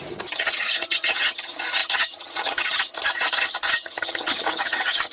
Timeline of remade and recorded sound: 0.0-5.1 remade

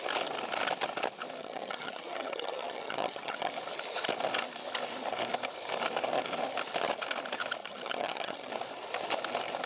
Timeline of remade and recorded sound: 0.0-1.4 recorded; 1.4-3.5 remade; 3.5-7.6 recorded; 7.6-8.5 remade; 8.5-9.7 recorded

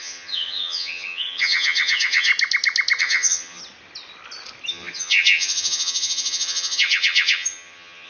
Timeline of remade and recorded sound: 0.0-2.3 remade; 2.3-3.0 recorded; 3.0-3.6 remade; 3.6-4.7 recorded; 4.7-8.1 remade

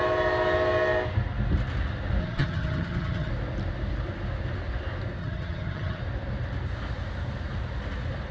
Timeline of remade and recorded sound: 0.0-2.2 recorded; 2.2-3.3 remade; 3.3-5.2 recorded; 5.2-6.0 remade; 6.0-8.3 recorded

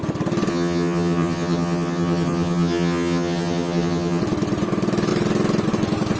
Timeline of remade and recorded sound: 0.0-0.5 recorded; 0.5-4.2 remade; 4.2-6.2 recorded

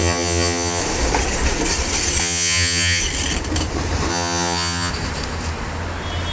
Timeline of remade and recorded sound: 0.0-0.8 remade; 0.8-2.2 recorded; 2.2-3.0 remade; 3.0-4.1 recorded; 4.1-4.9 remade; 4.9-6.3 recorded

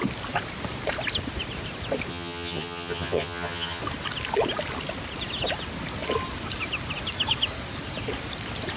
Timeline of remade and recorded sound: 0.0-2.1 recorded; 2.1-3.8 remade; 3.8-8.8 recorded

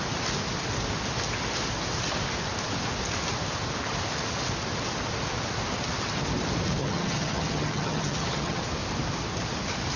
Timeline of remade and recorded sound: 0.0-6.8 recorded; 6.8-8.6 remade; 8.6-10.0 recorded